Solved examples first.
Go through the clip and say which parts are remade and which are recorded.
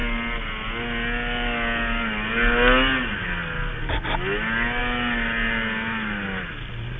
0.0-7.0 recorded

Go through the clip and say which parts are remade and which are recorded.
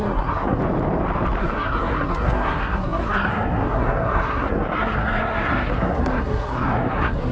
0.0-0.6 remade; 0.6-1.4 recorded; 1.4-7.3 remade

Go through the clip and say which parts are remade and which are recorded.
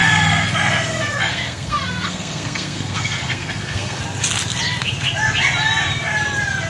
0.0-4.0 remade; 4.0-6.7 recorded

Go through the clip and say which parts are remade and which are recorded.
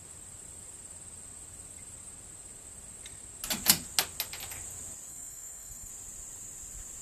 0.0-5.1 recorded; 5.1-5.9 remade; 5.9-7.0 recorded